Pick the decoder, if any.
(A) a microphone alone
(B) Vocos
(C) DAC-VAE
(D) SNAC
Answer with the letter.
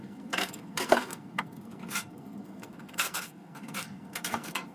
D